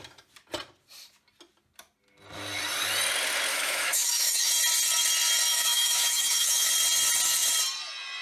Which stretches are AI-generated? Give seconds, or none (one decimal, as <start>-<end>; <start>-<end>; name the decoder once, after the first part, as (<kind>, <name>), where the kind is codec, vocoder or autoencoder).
3.5-4.5 (autoencoder, DAC-VAE); 5.5-6.7